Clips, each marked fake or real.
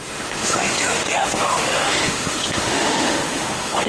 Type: fake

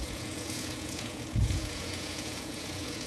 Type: fake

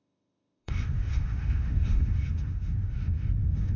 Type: fake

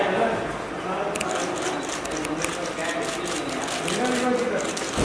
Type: real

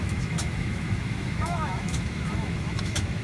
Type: fake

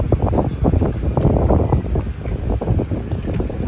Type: real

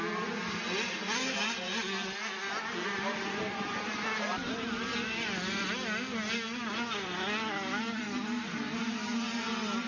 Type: real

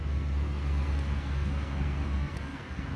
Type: fake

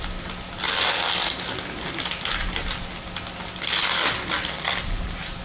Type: real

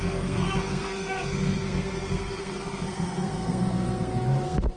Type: fake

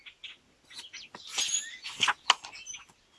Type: real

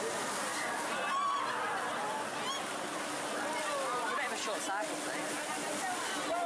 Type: real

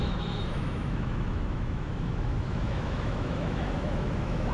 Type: fake